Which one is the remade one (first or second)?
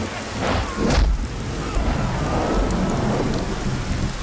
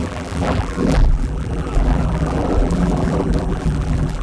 second